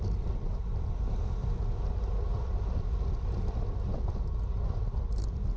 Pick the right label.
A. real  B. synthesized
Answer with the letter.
A